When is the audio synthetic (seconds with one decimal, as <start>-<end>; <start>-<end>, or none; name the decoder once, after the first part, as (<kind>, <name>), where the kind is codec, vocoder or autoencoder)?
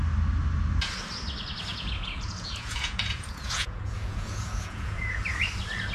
1.7-5.2 (vocoder, Vocos)